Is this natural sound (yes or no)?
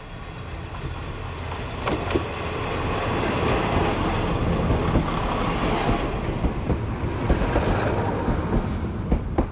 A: yes